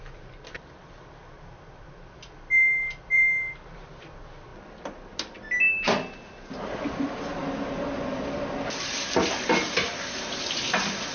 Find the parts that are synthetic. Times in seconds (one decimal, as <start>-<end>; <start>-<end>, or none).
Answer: 0.0-7.4; 8.9-11.1